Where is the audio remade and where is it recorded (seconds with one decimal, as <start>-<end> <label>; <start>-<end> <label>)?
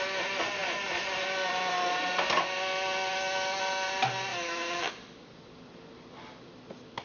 0.0-4.3 recorded; 4.3-4.9 remade; 4.9-7.0 recorded